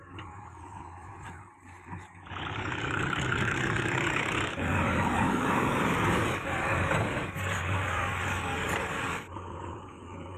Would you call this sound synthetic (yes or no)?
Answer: yes